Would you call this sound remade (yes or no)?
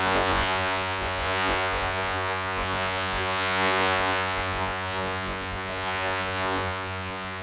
yes